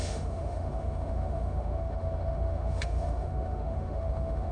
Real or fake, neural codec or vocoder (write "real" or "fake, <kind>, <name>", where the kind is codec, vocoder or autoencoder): fake, autoencoder, DAC-VAE